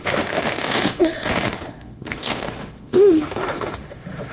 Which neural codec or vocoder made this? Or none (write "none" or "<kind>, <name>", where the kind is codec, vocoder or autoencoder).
autoencoder, DAC-VAE